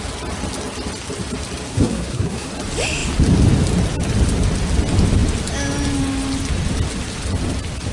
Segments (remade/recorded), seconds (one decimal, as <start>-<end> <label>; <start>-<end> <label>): 0.0-1.7 recorded; 1.7-2.5 remade; 2.5-7.9 recorded

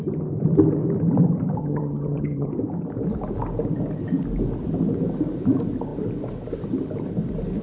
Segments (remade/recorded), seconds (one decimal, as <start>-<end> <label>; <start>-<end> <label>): 0.0-1.6 recorded; 1.6-2.5 remade; 2.5-7.6 recorded

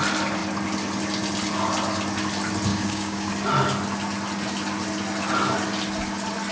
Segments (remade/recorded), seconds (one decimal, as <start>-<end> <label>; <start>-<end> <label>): 0.0-2.7 recorded; 2.7-3.3 remade; 3.3-6.5 recorded

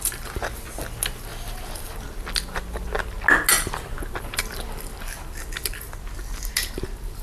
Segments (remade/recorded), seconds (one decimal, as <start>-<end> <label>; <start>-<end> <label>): 0.0-7.2 recorded

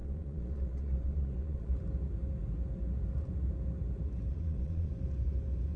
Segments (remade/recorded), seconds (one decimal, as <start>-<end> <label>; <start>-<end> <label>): 0.0-1.7 remade; 1.7-4.3 recorded; 4.3-4.9 remade; 4.9-5.8 recorded